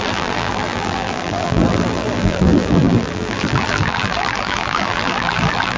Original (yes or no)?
no